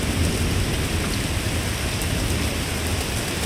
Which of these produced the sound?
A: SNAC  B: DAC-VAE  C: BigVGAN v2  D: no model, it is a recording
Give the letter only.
D